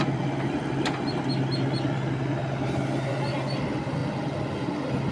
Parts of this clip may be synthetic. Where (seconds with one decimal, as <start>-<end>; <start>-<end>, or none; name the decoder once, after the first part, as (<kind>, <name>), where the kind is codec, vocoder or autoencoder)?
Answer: none